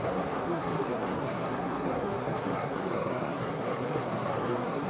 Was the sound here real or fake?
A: fake